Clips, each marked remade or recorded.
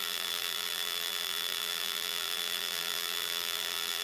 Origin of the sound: remade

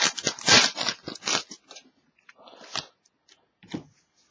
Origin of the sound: recorded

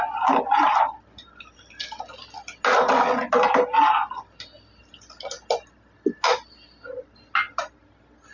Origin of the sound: recorded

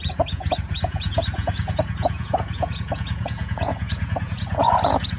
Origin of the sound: remade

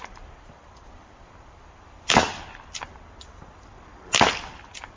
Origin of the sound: remade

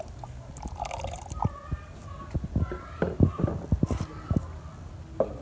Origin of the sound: recorded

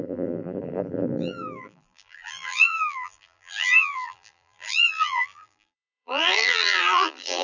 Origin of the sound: remade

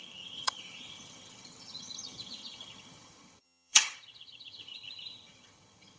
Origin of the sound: remade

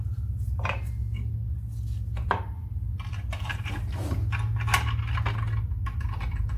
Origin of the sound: recorded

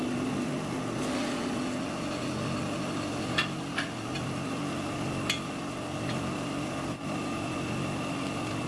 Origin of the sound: recorded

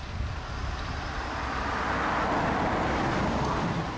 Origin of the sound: recorded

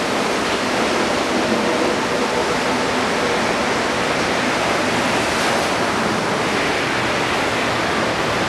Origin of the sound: recorded